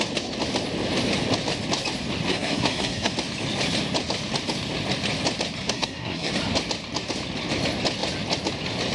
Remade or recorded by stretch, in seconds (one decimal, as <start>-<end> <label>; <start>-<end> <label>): 0.0-2.3 recorded; 2.3-3.1 remade; 3.1-5.6 recorded; 5.6-6.3 remade; 6.3-8.9 recorded